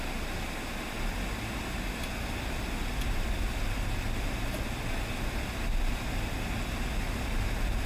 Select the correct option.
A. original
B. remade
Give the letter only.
A